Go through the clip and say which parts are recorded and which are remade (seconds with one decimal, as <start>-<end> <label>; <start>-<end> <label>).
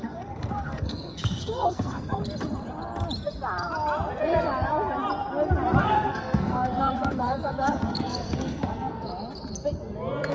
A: 0.0-2.2 remade; 2.2-5.8 recorded; 5.8-9.1 remade; 9.1-10.3 recorded